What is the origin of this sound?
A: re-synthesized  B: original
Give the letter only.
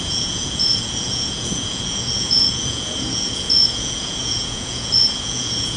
A